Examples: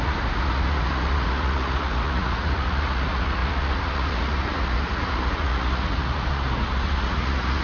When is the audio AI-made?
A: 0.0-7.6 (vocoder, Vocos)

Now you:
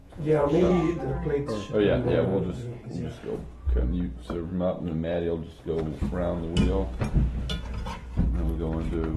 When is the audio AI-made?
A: 0.0-0.7 (vocoder, Vocos); 2.3-2.9

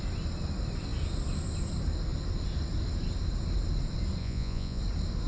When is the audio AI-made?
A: 4.2-4.8 (vocoder, Vocos)

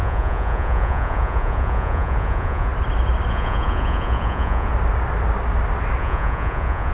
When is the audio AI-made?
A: 0.0-2.7 (vocoder, Vocos); 3.3-4.7; 6.0-6.9

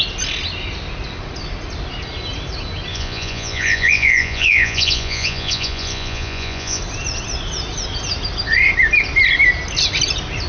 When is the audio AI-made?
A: 2.9-6.8 (vocoder, Vocos)